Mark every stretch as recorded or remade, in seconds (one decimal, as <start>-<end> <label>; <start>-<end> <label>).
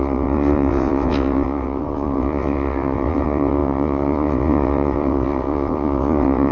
0.0-6.5 remade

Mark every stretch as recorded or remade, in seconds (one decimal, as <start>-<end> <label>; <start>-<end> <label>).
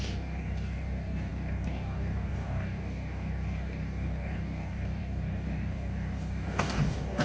0.0-7.2 remade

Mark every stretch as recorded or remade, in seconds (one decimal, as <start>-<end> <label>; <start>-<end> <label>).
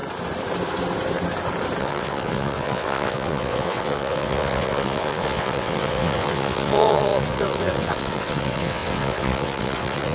0.0-1.8 recorded; 1.8-10.1 remade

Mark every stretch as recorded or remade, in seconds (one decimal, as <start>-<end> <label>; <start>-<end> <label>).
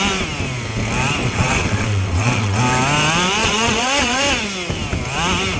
0.0-1.2 recorded; 1.2-2.6 remade; 2.6-3.4 recorded; 3.4-4.2 remade; 4.2-5.6 recorded